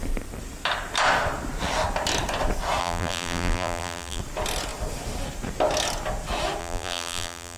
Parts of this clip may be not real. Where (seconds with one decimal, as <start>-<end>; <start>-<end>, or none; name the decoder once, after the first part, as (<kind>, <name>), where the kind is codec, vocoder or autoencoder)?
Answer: 2.8-4.2 (vocoder, BigVGAN v2); 6.6-7.6